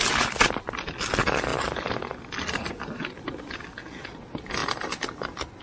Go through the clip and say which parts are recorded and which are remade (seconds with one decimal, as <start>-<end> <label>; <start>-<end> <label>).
0.0-5.6 recorded